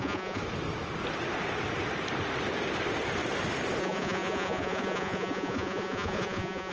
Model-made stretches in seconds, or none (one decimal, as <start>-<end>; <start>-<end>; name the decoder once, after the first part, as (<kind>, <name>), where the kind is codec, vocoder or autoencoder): 0.0-0.4 (vocoder, Vocos); 3.8-6.7